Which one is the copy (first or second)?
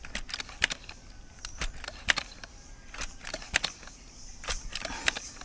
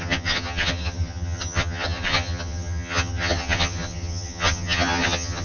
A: second